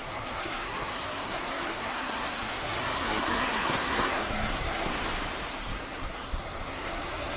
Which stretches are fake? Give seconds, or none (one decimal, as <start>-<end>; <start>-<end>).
0.0-4.9; 5.5-7.4